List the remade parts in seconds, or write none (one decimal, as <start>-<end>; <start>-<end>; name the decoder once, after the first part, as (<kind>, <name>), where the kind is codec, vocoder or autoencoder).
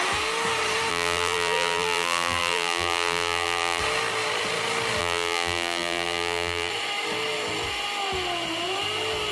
0.9-3.8 (vocoder, BigVGAN v2); 5.0-6.7